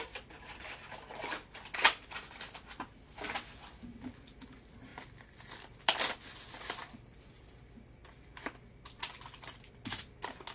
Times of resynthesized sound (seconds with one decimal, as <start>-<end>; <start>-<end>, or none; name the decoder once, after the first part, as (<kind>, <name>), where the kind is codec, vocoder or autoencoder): none